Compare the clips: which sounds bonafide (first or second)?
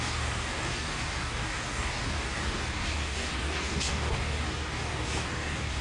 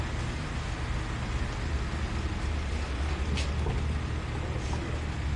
second